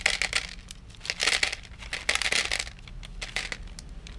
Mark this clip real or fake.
real